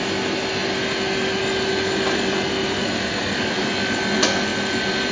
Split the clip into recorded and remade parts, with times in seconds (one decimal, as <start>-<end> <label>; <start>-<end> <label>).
0.0-5.1 recorded